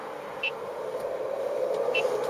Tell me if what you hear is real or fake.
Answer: fake